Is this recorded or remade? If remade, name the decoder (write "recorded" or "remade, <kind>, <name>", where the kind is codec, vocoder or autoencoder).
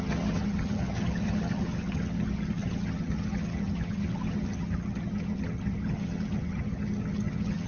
remade, vocoder, HiFi-GAN